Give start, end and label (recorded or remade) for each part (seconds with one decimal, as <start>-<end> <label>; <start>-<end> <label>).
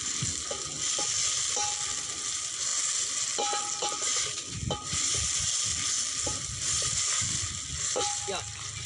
0.0-8.9 recorded